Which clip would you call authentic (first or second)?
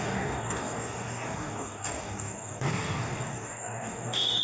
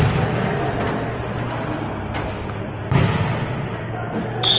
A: second